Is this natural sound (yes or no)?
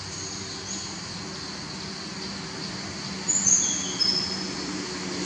yes